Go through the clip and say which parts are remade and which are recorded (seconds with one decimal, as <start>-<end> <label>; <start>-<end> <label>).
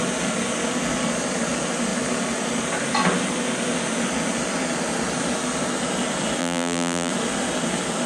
0.0-6.4 recorded; 6.4-7.1 remade; 7.1-8.1 recorded